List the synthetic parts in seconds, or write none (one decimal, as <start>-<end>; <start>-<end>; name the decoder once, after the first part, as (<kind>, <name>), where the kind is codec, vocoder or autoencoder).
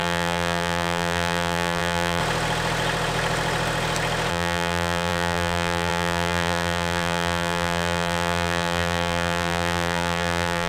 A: 0.0-2.2 (vocoder, BigVGAN v2); 4.3-10.7